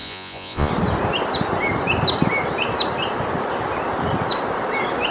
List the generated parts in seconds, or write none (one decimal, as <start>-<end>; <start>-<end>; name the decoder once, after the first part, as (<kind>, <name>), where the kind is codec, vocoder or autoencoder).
0.0-0.7 (vocoder, Vocos)